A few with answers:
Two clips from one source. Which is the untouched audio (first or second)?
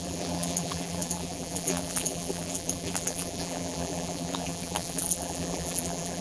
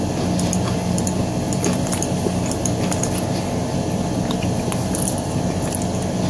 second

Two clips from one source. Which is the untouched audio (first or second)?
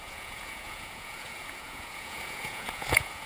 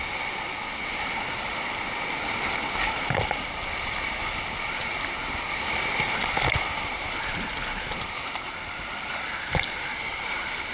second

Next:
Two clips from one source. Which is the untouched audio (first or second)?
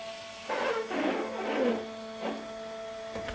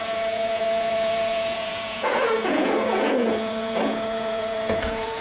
first